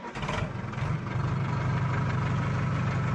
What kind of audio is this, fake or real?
real